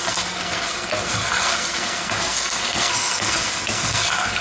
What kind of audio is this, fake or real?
fake